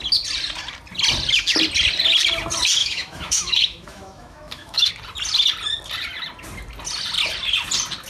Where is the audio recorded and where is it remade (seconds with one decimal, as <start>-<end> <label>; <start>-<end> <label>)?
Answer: 0.0-2.8 recorded; 2.8-4.9 remade; 4.9-8.1 recorded